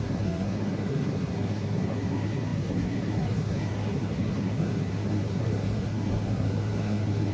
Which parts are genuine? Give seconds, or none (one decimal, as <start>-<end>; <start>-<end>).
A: none